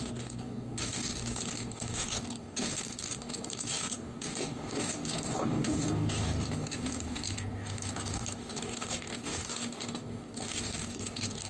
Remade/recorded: remade